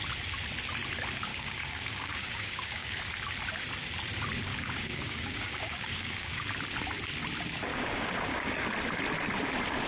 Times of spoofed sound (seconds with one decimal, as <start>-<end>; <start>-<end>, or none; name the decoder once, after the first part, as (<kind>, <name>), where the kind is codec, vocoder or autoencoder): 1.3-3.0 (codec, DAC); 4.5-6.5; 7.7-8.7